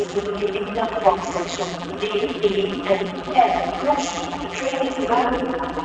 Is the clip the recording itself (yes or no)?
no